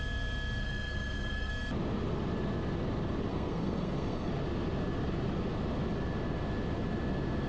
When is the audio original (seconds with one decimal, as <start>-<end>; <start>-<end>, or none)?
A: 0.0-0.6; 1.5-3.3; 4.3-7.5